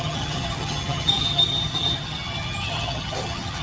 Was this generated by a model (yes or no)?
yes